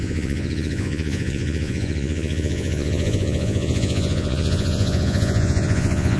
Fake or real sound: fake